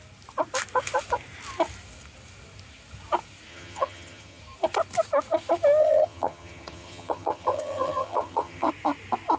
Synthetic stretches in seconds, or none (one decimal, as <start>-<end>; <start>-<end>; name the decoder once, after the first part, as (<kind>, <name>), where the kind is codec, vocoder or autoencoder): 3.5-4.4 (vocoder, HiFi-GAN); 5.8-8.7